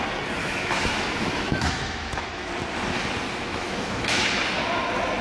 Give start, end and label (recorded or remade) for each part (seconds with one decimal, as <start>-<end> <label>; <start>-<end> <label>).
0.0-0.4 recorded; 0.4-2.5 remade; 2.5-3.5 recorded; 3.5-4.3 remade; 4.3-5.2 recorded